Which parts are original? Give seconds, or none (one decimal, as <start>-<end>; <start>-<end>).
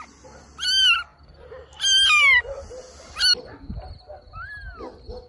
0.0-5.3